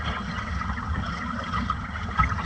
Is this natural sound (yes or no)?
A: no